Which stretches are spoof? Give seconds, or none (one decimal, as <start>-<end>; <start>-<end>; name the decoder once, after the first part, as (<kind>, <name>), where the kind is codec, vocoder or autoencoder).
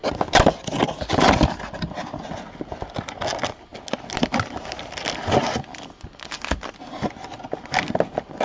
none